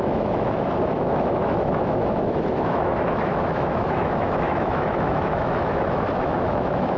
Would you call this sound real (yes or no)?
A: no